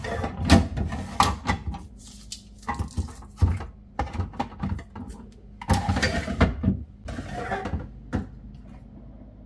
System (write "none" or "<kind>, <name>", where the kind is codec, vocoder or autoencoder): none